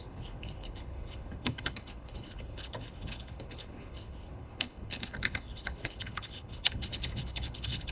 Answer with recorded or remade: remade